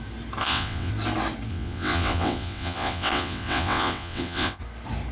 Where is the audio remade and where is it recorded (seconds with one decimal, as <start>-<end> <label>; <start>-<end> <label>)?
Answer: 0.0-0.4 recorded; 0.4-0.9 remade; 0.9-1.5 recorded; 1.5-4.6 remade; 4.6-5.1 recorded